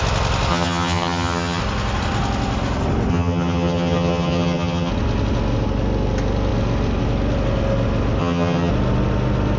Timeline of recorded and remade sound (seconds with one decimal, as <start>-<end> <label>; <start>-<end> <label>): 0.0-0.5 recorded; 0.5-1.6 remade; 1.6-3.1 recorded; 3.1-4.9 remade; 4.9-8.2 recorded; 8.2-8.7 remade; 8.7-9.6 recorded